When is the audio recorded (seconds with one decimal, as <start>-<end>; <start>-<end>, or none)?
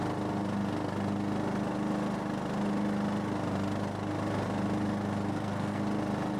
0.0-5.3; 5.8-6.4